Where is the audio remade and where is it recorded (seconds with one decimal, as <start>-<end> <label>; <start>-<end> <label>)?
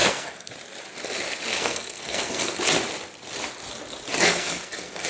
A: 0.0-0.5 remade; 0.5-1.5 recorded; 1.5-2.6 remade; 2.6-4.1 recorded; 4.1-5.1 remade